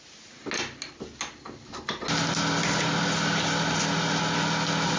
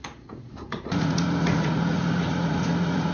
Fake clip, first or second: second